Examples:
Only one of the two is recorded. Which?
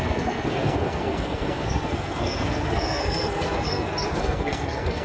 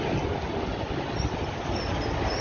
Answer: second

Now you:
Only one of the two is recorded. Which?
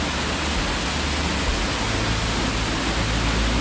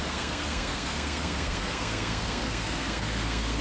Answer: first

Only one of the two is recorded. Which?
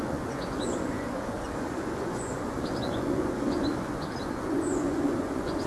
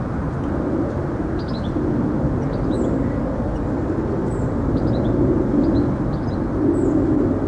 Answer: second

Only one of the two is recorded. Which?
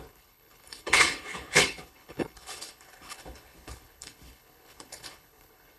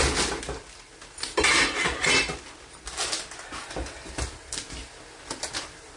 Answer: second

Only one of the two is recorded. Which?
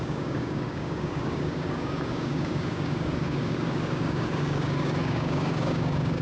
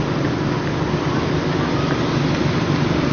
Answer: second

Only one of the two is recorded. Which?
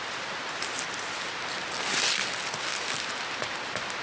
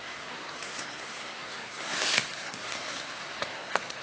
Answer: first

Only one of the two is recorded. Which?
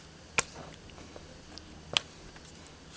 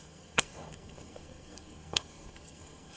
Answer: first